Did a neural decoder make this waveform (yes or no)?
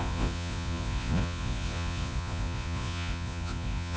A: yes